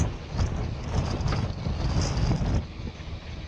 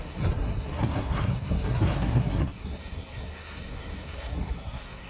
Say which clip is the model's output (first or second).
second